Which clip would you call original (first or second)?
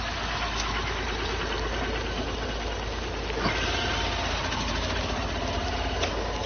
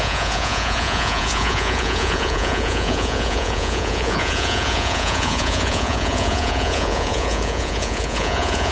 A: first